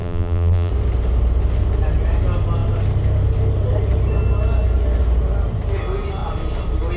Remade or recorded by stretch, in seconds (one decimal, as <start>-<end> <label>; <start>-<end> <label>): 0.0-0.7 remade; 0.7-7.0 recorded